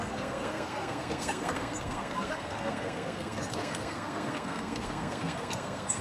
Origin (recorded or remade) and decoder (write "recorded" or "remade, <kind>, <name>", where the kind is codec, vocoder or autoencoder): remade, codec, SNAC